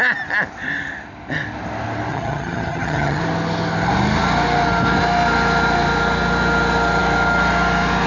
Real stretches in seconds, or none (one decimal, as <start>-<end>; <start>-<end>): 0.0-2.1; 3.2-8.1